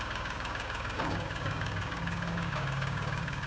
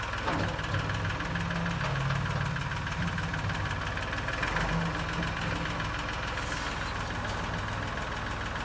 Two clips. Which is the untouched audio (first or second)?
second